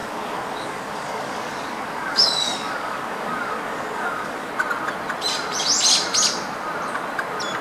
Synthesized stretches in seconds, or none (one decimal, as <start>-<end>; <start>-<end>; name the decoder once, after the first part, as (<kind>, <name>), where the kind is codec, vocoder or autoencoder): 0.0-4.5 (codec, DAC)